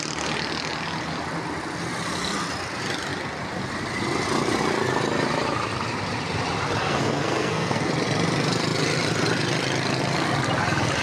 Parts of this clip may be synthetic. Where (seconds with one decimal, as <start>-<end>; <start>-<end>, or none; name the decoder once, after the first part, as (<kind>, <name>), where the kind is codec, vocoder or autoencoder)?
6.8-7.9 (codec, SNAC)